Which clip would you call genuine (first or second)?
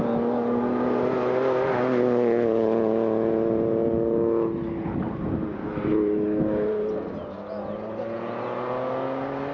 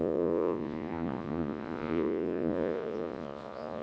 first